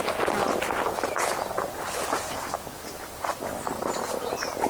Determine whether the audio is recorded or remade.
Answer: recorded